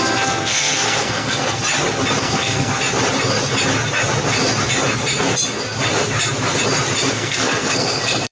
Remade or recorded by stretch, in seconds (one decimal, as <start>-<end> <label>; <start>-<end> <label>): 0.0-1.6 remade; 1.6-2.2 recorded; 2.2-2.7 remade; 2.7-7.1 recorded; 7.1-8.3 remade